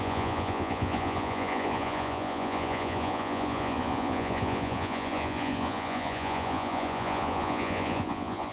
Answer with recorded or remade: remade